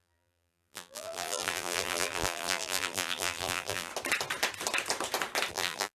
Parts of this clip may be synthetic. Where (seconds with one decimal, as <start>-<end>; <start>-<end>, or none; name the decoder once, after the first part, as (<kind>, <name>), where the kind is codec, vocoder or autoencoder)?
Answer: 0.0-3.9 (vocoder, BigVGAN v2); 5.5-5.9